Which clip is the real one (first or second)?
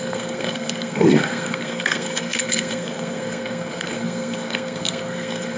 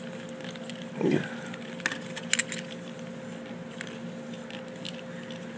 second